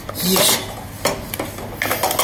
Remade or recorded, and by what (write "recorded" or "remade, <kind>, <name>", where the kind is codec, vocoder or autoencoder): recorded